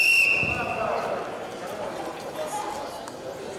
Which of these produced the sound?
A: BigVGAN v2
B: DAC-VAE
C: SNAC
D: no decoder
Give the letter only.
D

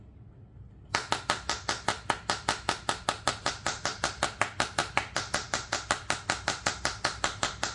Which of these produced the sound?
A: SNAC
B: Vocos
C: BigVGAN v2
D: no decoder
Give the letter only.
D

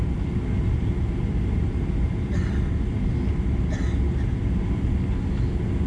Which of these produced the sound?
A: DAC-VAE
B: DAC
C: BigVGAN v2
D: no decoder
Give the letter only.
D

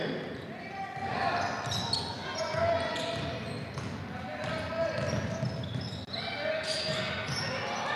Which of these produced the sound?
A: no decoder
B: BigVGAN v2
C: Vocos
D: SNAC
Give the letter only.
A